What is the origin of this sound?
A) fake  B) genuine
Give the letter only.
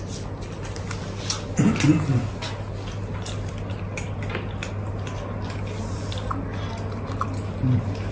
B